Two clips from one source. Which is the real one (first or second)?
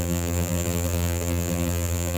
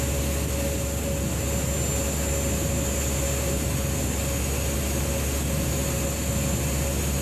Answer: second